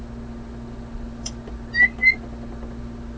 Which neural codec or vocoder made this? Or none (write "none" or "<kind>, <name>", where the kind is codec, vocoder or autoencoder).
none